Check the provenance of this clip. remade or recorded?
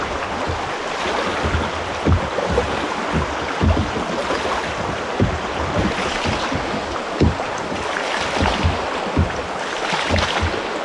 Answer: recorded